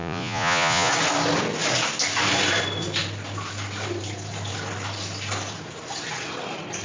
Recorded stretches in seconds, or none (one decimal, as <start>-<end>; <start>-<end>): 0.9-6.8

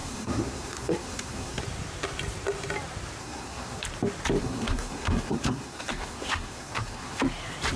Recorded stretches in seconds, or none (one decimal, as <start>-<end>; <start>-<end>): 1.6-3.2; 3.8-4.4; 7.2-7.8

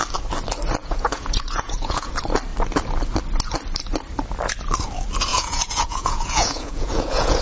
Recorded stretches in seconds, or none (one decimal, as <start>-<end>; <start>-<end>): 0.0-0.8; 2.1-5.3

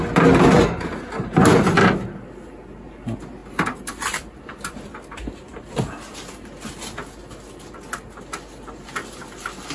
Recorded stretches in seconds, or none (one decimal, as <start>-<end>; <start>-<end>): 0.0-9.7

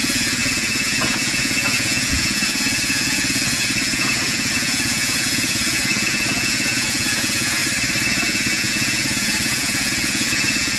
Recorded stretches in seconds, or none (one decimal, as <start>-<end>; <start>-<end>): 7.6-8.1

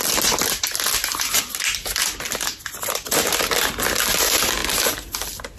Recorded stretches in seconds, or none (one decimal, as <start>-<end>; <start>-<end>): 0.0-5.6

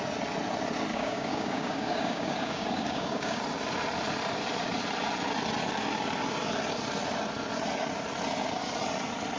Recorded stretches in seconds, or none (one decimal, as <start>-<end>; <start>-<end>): 0.0-0.9; 3.4-9.4